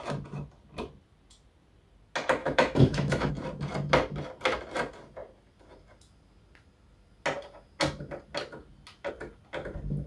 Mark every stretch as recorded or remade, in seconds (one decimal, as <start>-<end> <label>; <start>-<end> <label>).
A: 0.0-2.4 recorded; 2.4-3.3 remade; 3.3-10.1 recorded